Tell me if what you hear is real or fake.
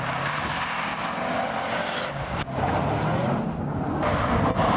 real